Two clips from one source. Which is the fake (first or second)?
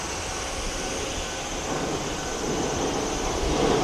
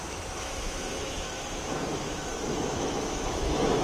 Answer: second